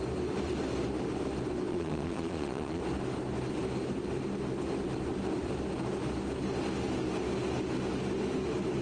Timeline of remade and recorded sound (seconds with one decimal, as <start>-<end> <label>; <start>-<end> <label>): 0.0-1.7 recorded; 1.7-2.8 remade; 2.8-8.8 recorded